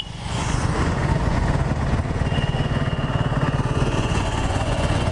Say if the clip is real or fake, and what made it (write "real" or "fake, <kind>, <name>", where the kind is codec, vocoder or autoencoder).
fake, vocoder, Vocos